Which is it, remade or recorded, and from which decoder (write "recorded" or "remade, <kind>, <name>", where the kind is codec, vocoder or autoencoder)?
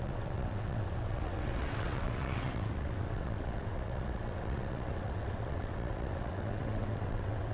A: remade, vocoder, WaveNeXt